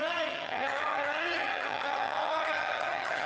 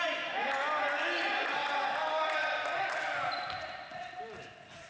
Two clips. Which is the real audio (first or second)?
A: second